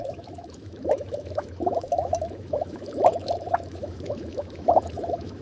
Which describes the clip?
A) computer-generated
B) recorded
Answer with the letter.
A